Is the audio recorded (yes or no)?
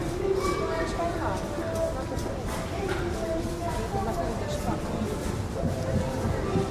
yes